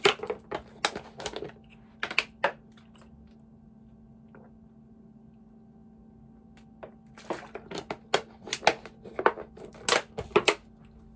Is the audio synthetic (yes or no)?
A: no